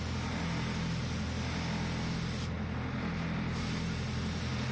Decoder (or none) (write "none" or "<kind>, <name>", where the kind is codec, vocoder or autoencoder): none